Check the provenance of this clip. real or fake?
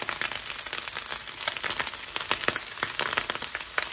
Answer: real